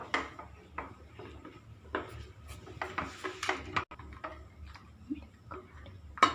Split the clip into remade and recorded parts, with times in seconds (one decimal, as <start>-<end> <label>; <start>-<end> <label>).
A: 0.0-6.3 recorded

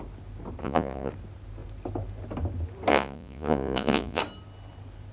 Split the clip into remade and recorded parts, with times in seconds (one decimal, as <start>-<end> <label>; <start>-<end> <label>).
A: 0.0-0.6 recorded; 0.6-1.1 remade; 1.1-2.9 recorded; 2.9-4.2 remade; 4.2-5.1 recorded

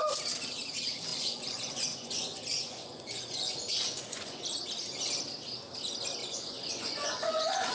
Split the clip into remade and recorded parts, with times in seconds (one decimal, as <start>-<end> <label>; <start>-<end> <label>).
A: 0.0-1.1 recorded; 1.1-4.4 remade; 4.4-6.2 recorded; 6.2-7.7 remade

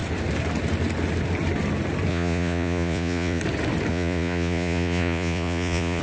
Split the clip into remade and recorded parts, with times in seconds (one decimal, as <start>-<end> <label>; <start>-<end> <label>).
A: 0.0-2.1 recorded; 2.1-3.4 remade; 3.4-3.9 recorded; 3.9-6.0 remade